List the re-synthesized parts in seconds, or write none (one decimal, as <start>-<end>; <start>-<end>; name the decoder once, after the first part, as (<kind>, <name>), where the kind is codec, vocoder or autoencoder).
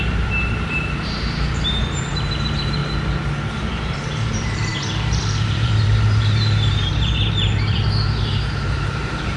0.0-2.8 (vocoder, BigVGAN v2); 3.5-9.4